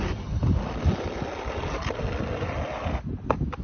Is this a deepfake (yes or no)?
no